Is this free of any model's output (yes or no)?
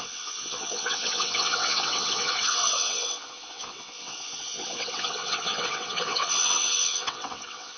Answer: no